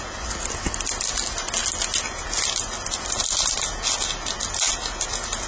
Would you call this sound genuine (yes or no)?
yes